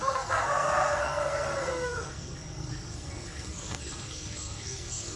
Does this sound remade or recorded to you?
remade